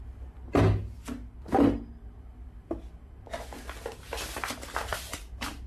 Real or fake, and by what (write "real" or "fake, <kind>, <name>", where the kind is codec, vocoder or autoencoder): real